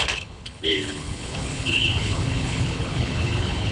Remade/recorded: remade